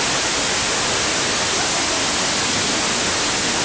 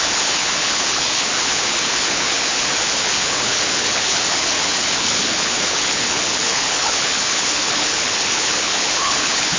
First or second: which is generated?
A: second